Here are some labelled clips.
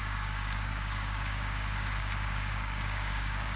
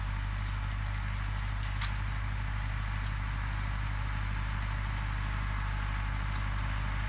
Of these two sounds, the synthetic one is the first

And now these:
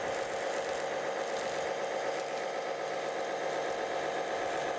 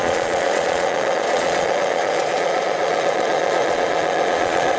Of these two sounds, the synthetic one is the second